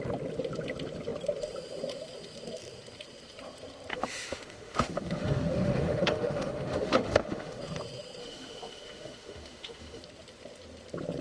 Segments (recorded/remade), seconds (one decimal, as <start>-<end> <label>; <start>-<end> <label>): 0.0-3.9 recorded; 3.9-7.6 remade; 7.6-8.2 recorded; 8.2-10.0 remade; 10.0-11.2 recorded